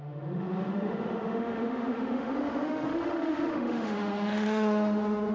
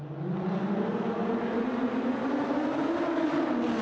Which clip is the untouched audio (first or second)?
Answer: second